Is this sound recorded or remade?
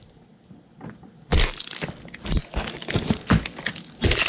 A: recorded